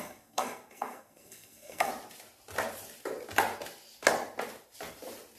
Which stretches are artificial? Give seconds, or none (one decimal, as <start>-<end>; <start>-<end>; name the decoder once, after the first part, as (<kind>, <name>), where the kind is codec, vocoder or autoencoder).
0.0-1.9 (codec, SNAC)